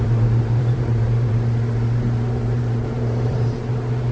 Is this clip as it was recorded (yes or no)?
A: no